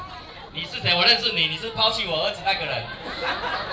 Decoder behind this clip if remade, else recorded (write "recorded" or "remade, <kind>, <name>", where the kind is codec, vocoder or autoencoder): recorded